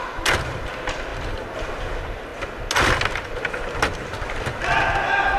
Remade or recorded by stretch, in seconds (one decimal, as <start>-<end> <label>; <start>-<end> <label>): 0.0-5.4 recorded